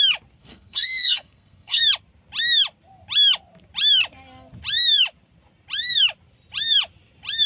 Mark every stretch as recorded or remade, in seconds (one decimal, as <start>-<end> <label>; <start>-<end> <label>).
0.0-0.4 recorded; 0.4-1.8 remade; 1.8-7.5 recorded